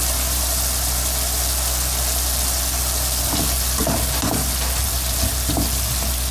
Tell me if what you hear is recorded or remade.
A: recorded